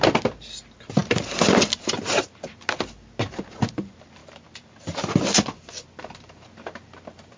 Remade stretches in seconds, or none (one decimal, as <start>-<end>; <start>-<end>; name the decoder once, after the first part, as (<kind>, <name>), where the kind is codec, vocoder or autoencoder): none